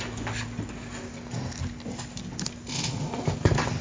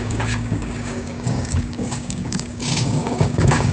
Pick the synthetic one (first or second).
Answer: second